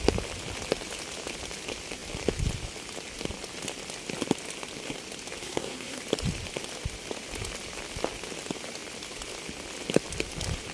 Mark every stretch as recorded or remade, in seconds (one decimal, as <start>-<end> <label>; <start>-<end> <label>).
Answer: 0.0-5.4 recorded; 5.4-6.0 remade; 6.0-10.7 recorded

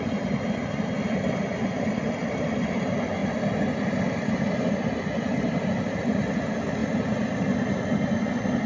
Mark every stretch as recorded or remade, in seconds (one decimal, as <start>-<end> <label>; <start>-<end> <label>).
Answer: 0.0-8.7 recorded

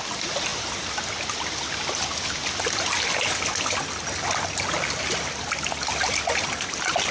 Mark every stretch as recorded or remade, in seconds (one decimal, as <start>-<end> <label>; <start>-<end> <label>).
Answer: 0.0-7.1 recorded

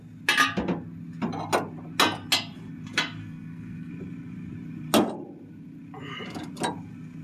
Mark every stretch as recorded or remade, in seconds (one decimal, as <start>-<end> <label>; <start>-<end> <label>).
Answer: 0.0-3.2 recorded; 3.2-3.9 remade; 3.9-7.2 recorded

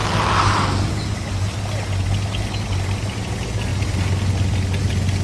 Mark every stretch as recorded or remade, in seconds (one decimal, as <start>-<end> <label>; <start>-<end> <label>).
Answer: 0.0-5.2 recorded